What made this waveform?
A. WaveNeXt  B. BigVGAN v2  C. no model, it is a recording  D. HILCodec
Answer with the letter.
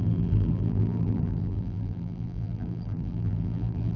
B